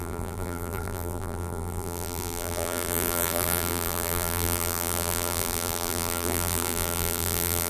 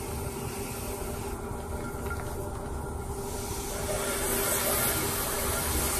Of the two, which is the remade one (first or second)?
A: first